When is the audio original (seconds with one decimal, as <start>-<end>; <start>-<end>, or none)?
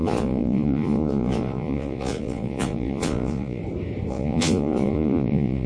3.6-4.1